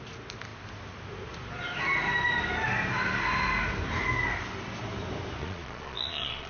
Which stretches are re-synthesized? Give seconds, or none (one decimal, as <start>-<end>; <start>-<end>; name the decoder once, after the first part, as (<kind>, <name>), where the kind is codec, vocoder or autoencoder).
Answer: 5.4-6.5 (vocoder, Vocos)